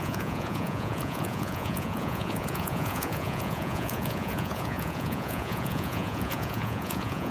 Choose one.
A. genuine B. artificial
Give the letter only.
B